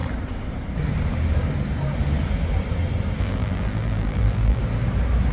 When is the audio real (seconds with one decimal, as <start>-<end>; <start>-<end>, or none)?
0.0-3.2; 4.6-5.3